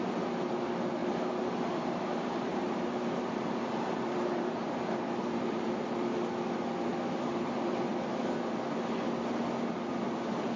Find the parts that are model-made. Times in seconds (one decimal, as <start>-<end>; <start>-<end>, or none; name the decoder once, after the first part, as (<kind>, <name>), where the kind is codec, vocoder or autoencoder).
1.0-5.8 (vocoder, BigVGAN v2); 6.9-7.8